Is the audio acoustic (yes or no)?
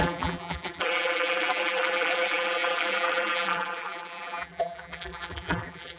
no